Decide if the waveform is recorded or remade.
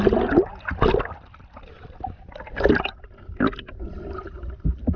recorded